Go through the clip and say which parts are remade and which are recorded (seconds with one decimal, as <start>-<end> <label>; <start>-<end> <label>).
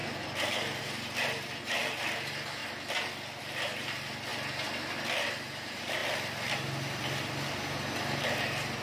0.0-2.6 remade; 2.6-3.4 recorded; 3.4-4.3 remade; 4.3-5.2 recorded; 5.2-6.0 remade; 6.0-8.4 recorded; 8.4-8.8 remade